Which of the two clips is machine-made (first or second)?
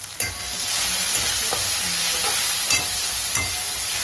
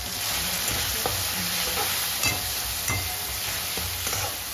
second